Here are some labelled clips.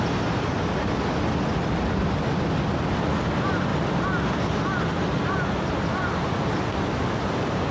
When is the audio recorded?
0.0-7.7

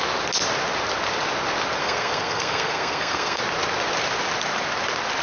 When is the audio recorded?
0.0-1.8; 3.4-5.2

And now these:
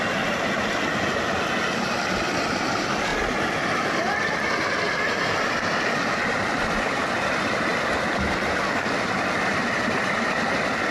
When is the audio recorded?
0.0-10.9